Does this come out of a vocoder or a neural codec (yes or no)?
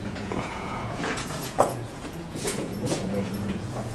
yes